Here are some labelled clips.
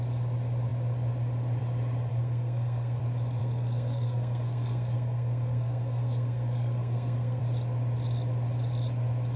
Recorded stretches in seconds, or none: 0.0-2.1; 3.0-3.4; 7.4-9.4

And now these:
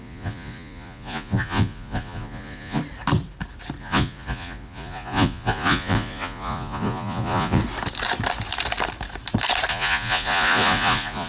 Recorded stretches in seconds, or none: 2.8-3.8; 7.6-9.7